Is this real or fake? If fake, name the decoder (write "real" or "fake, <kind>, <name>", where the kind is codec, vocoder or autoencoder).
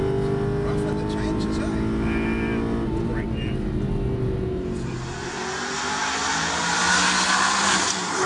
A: real